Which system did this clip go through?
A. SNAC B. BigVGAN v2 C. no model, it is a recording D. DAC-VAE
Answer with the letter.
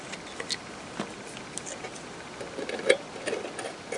C